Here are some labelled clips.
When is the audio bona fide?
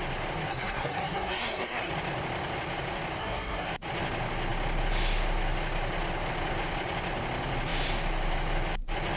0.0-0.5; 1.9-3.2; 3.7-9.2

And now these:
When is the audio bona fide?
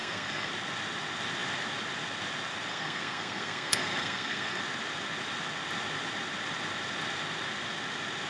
0.5-2.7; 4.6-8.3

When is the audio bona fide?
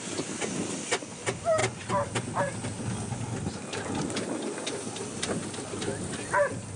0.0-6.8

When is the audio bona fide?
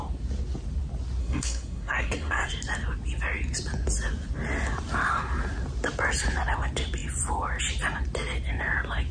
0.0-1.2; 2.5-9.1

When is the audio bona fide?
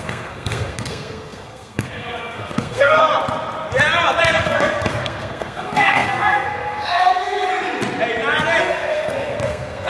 3.1-4.2; 7.5-8.6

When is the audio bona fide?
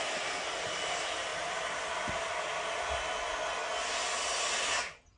0.0-5.2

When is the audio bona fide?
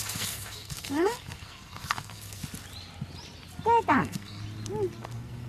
2.4-3.9; 4.4-5.0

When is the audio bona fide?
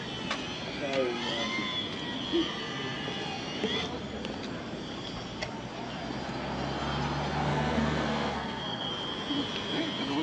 0.0-7.5; 8.9-10.2